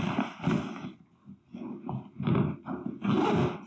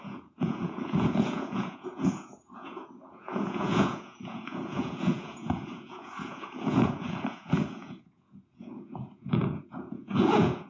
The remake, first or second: second